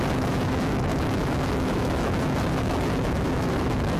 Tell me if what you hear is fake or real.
fake